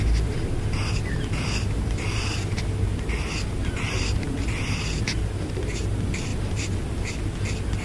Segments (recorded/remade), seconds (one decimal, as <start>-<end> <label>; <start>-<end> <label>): 0.0-3.6 recorded; 3.6-4.5 remade; 4.5-6.3 recorded; 6.3-7.0 remade; 7.0-7.8 recorded